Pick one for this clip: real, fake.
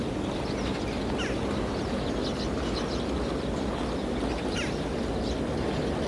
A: real